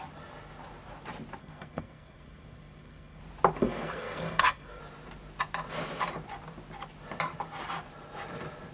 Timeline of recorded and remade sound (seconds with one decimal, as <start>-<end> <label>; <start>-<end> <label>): 0.0-1.4 recorded; 1.4-3.2 remade; 3.2-3.6 recorded; 3.6-4.8 remade; 4.8-8.7 recorded

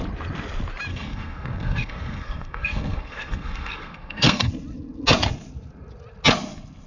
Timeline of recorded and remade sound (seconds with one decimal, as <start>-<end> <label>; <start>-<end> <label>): 0.0-0.9 recorded; 0.9-4.5 remade; 4.5-6.9 recorded